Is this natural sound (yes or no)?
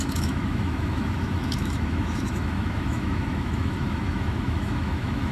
no